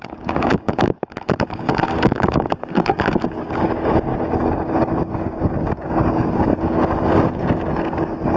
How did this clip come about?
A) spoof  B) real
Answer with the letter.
A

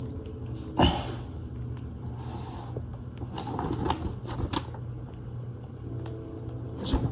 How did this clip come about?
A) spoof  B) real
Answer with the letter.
B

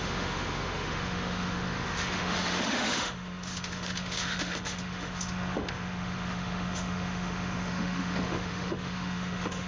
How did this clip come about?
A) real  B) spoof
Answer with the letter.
B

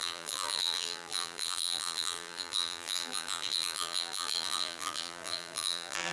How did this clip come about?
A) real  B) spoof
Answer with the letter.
B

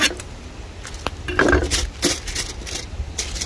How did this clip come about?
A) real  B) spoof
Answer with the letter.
A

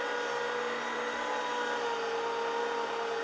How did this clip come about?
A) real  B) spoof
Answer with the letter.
A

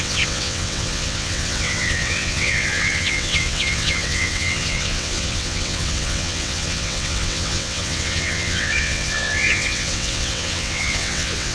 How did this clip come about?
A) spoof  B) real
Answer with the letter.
A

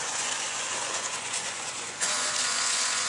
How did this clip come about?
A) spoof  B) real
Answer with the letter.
A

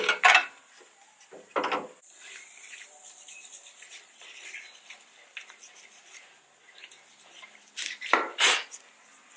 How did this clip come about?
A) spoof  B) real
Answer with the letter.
A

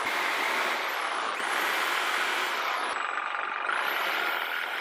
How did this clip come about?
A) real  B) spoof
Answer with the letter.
A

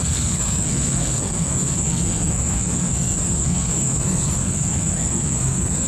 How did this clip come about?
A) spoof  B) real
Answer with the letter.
A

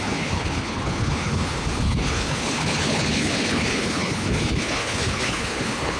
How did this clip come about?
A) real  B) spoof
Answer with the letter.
B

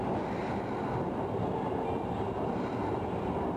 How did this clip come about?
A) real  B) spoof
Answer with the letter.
A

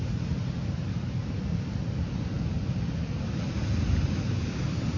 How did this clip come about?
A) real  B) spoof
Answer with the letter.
A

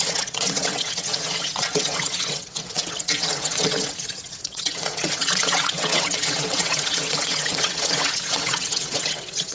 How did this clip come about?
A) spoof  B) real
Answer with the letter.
A